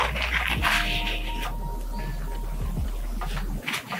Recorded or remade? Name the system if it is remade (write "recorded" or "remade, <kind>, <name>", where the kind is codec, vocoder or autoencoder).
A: recorded